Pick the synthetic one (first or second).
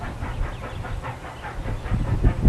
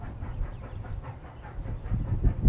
second